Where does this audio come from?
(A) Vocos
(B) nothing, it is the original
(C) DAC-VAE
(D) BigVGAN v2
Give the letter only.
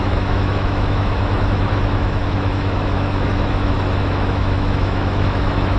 C